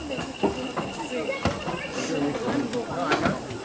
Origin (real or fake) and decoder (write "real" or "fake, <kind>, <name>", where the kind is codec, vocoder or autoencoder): real